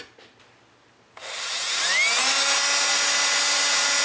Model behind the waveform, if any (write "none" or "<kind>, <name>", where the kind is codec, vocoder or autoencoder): none